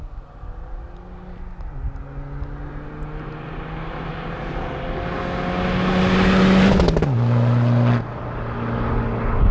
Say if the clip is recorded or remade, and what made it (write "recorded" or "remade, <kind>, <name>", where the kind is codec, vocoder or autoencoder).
recorded